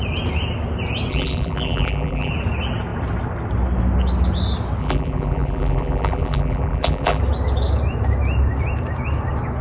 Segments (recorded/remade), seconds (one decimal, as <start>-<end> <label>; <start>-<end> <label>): 0.0-1.1 recorded; 1.1-2.3 remade; 2.3-4.8 recorded; 4.8-7.2 remade; 7.2-9.6 recorded

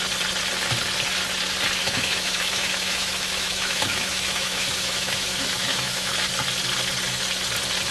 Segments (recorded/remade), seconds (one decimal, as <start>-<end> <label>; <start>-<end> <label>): 0.0-1.8 recorded; 1.8-6.1 remade; 6.1-7.9 recorded

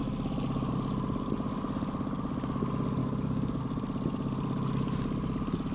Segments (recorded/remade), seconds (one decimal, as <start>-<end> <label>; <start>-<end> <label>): 0.0-3.0 recorded; 3.0-3.6 remade; 3.6-5.7 recorded